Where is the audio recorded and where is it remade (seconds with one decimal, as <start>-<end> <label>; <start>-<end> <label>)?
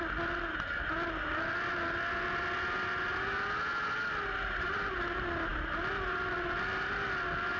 0.0-7.6 recorded